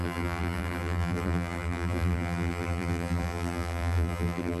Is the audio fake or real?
fake